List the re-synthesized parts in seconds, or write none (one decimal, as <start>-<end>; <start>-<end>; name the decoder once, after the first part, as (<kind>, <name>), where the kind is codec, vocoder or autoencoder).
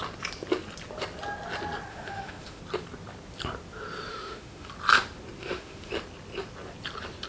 1.9-2.6 (autoencoder, DAC-VAE); 4.1-4.7; 5.4-5.9